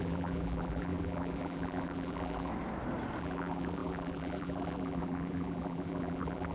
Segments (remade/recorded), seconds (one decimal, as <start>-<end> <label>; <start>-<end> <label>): 0.0-2.5 remade; 2.5-3.2 recorded; 3.2-6.5 remade